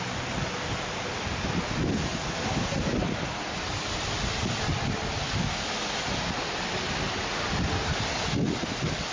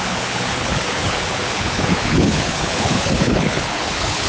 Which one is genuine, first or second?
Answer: first